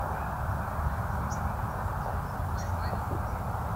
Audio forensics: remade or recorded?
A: recorded